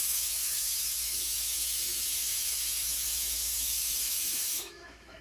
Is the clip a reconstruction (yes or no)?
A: yes